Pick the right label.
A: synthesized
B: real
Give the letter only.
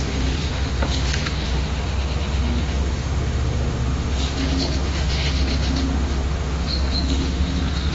A